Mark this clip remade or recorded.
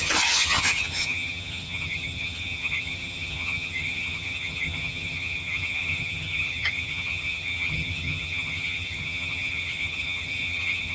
remade